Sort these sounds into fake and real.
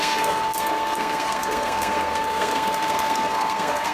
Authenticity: fake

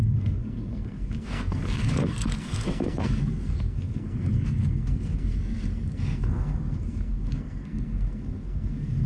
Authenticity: fake